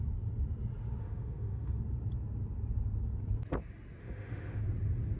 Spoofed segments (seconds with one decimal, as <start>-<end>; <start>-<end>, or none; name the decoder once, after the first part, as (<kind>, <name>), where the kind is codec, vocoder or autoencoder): 1.0-1.8 (autoencoder, DAC-VAE); 4.0-4.6